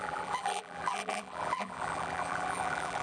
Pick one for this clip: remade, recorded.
remade